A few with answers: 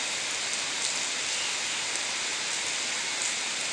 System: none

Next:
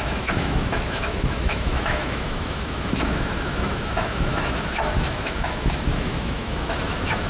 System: autoencoder, DAC-VAE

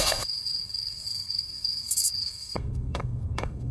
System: codec, SNAC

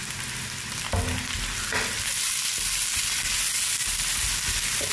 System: none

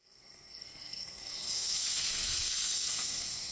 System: codec, SNAC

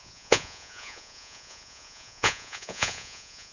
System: vocoder, Vocos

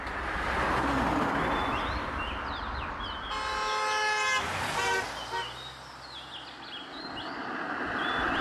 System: none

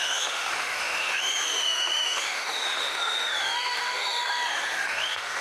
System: autoencoder, DAC-VAE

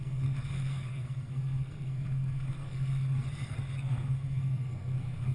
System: codec, SNAC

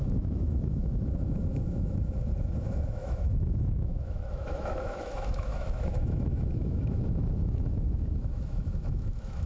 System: autoencoder, DAC-VAE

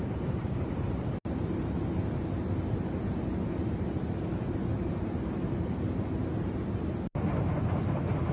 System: none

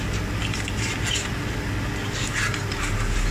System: none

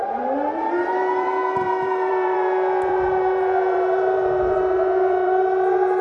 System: vocoder, BigVGAN v2